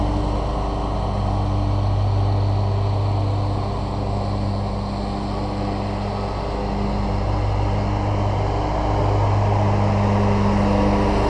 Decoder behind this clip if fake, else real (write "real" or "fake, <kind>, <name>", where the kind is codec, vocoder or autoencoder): real